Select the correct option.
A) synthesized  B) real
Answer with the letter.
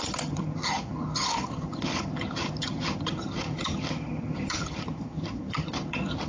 A